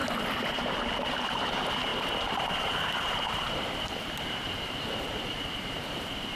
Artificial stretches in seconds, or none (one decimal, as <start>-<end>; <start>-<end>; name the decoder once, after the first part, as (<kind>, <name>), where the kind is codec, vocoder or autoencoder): 0.6-6.4 (vocoder, BigVGAN v2)